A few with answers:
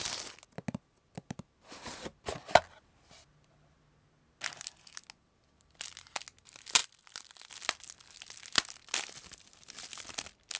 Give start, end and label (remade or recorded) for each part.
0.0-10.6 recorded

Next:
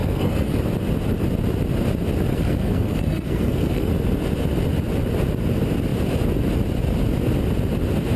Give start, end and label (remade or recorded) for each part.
0.0-0.6 remade; 0.6-2.3 recorded; 2.3-3.9 remade; 3.9-8.2 recorded

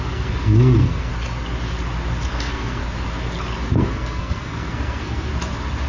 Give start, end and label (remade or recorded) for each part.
0.0-1.1 remade; 1.1-2.3 recorded; 2.3-2.8 remade; 2.8-3.7 recorded; 3.7-5.3 remade; 5.3-5.9 recorded

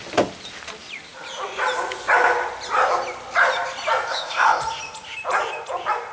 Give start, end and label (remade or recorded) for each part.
0.0-4.1 recorded; 4.1-4.6 remade; 4.6-6.1 recorded

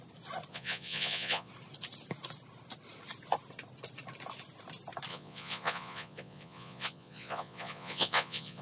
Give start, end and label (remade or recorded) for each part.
0.0-0.5 recorded; 0.5-1.5 remade; 1.5-5.1 recorded; 5.1-8.6 remade